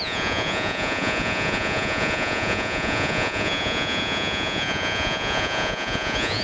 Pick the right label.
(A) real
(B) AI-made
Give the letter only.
B